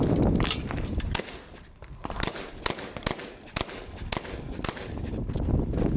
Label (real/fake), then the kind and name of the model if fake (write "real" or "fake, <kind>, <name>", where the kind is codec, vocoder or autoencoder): real